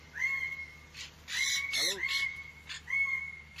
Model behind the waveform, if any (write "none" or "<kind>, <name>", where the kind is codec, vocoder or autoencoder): none